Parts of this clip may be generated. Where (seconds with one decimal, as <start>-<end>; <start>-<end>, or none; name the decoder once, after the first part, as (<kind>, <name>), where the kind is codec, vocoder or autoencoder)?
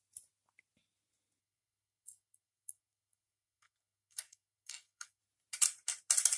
1.4-5.2 (codec, SNAC)